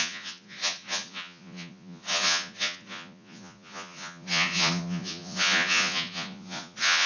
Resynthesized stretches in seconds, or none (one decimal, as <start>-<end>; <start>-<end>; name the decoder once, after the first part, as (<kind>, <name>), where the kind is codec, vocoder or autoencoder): 0.0-7.1 (vocoder, Vocos)